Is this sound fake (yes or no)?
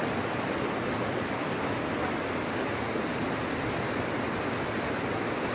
no